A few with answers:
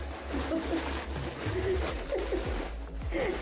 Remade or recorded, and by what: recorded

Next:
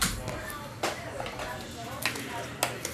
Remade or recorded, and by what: recorded